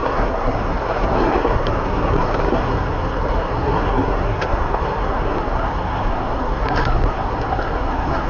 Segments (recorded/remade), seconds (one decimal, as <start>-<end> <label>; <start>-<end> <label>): 0.0-8.3 remade